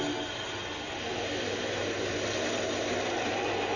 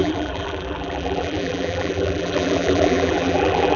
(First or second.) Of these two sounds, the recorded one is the first